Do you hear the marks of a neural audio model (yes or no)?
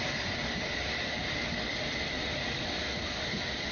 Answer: no